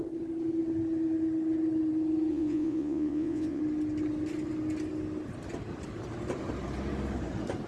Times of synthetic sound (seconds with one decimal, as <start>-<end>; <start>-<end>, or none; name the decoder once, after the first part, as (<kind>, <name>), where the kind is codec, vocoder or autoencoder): 2.3-3.6 (vocoder, Vocos)